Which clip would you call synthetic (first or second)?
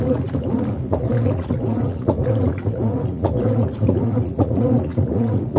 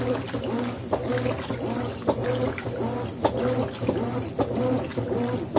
first